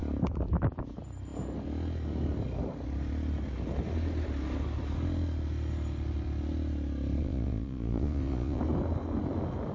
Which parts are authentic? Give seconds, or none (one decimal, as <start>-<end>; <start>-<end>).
0.0-7.2; 8.6-9.7